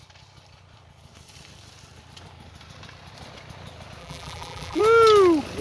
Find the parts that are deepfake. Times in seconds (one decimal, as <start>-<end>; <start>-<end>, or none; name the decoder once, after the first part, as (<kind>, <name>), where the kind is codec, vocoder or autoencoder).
4.0-4.8 (vocoder, BigVGAN v2)